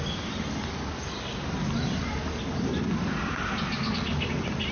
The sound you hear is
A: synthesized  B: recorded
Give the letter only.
B